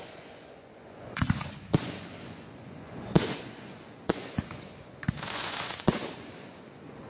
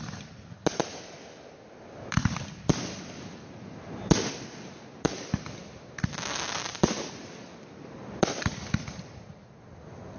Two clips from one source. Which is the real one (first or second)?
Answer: second